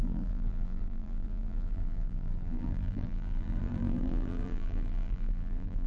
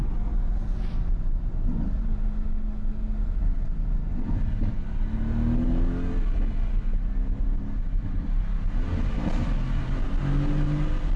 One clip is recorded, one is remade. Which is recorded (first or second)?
second